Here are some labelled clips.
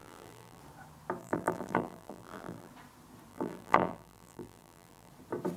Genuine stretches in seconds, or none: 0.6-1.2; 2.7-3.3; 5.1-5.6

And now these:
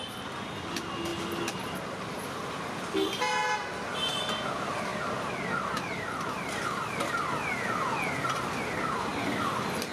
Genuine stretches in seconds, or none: 0.0-1.1; 2.0-9.1